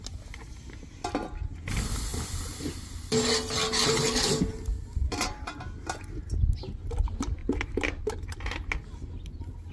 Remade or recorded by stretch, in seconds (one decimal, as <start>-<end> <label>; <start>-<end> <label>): 0.0-9.7 recorded